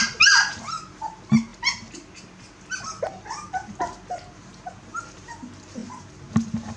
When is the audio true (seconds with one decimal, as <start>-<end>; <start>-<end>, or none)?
0.0-6.8